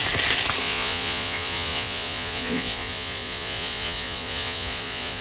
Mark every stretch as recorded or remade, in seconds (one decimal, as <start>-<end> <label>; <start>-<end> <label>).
0.0-0.6 recorded; 0.6-5.2 remade